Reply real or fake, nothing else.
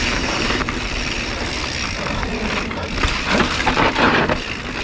fake